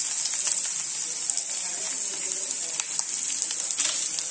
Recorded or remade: recorded